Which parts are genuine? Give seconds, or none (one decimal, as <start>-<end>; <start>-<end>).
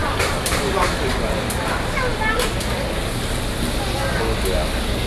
1.1-5.1